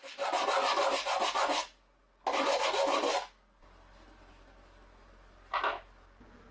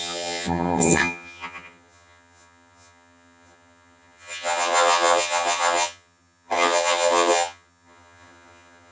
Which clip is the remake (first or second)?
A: second